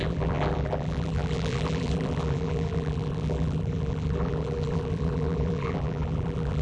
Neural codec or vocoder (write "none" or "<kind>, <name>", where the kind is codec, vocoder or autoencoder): vocoder, BigVGAN v2